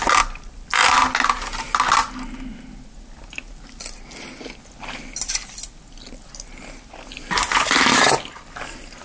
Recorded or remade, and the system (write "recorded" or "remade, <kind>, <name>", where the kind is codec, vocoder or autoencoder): recorded